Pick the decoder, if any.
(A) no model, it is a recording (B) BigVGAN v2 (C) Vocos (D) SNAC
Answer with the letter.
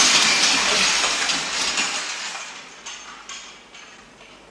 A